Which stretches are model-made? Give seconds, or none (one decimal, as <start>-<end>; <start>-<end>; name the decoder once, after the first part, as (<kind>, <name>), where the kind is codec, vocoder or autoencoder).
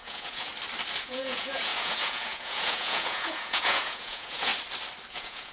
0.0-0.5 (vocoder, Vocos); 1.0-4.5; 5.1-5.5